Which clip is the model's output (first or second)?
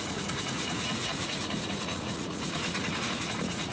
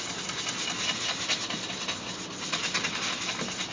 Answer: first